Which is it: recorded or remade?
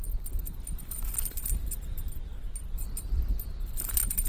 recorded